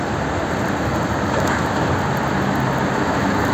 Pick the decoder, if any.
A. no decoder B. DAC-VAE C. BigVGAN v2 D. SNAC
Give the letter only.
A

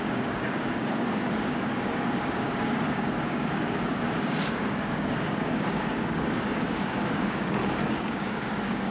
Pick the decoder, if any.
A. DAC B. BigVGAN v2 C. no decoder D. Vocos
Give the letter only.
A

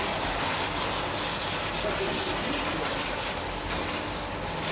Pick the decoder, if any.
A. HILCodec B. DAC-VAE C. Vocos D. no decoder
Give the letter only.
D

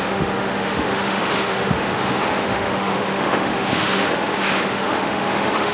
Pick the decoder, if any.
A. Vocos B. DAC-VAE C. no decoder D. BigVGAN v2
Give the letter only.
B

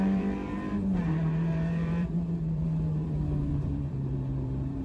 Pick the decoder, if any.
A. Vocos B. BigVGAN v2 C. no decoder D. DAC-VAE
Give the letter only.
B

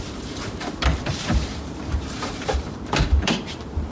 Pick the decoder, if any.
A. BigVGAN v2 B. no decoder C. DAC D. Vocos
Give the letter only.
A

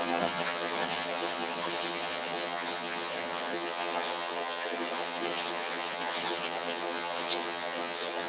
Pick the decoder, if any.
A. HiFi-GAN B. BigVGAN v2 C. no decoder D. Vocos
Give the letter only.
A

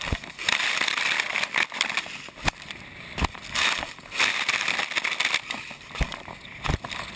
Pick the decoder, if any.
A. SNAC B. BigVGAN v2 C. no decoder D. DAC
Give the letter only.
B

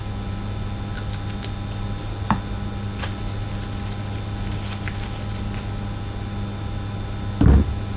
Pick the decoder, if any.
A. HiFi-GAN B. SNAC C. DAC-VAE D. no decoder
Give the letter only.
D